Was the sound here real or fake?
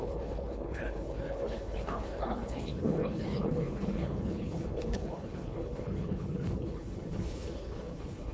fake